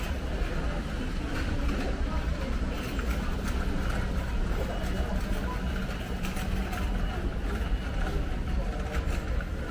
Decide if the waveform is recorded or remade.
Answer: recorded